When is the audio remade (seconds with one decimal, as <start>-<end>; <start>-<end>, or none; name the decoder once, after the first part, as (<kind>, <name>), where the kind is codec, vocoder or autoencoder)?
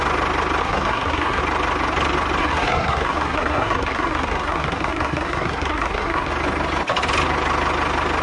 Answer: 0.6-1.4 (codec, SNAC); 2.4-6.3